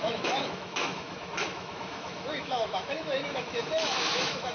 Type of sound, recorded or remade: remade